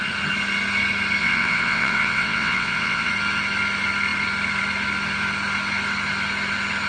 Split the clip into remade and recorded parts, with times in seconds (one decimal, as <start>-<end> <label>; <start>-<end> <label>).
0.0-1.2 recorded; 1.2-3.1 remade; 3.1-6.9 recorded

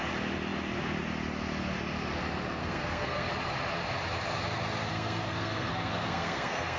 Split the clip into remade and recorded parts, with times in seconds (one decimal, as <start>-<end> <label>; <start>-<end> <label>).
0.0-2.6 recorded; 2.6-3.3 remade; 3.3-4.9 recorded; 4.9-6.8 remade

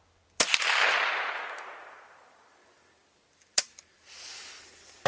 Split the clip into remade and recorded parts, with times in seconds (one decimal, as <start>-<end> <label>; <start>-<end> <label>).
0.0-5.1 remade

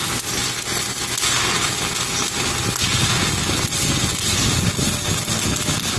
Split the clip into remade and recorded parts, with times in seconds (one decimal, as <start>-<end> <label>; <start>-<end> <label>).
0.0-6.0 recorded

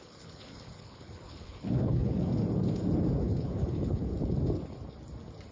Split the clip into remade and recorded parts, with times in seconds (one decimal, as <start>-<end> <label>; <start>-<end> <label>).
0.0-2.3 remade; 2.3-3.2 recorded; 3.2-4.1 remade; 4.1-5.5 recorded